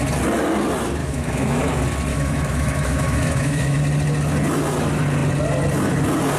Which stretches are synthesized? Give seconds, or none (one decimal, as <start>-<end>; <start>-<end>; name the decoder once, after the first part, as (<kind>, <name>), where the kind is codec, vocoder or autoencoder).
1.0-1.6 (autoencoder, DAC-VAE); 2.1-3.8